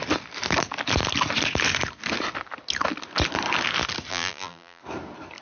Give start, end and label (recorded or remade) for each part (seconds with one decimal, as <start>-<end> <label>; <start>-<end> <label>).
0.0-4.1 recorded; 4.1-4.8 remade; 4.8-5.4 recorded